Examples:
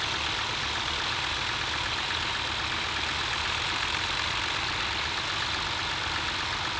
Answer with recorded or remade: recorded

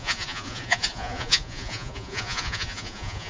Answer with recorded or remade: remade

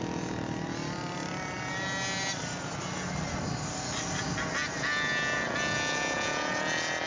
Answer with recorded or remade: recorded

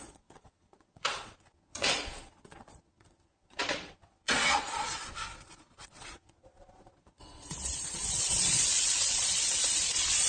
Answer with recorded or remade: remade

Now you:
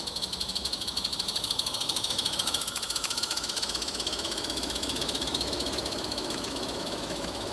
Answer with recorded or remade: remade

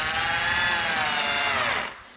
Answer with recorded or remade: recorded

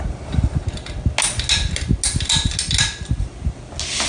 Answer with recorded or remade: recorded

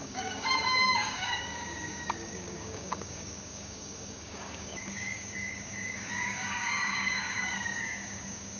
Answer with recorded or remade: remade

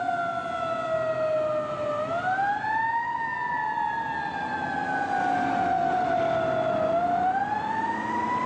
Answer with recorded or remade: recorded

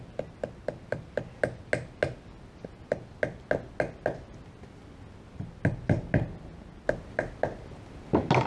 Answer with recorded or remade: recorded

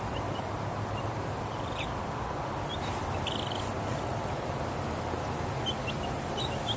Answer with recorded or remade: recorded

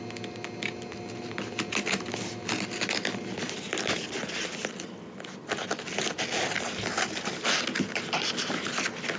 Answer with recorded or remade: recorded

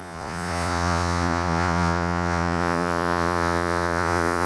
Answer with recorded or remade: remade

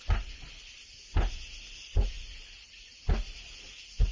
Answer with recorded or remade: recorded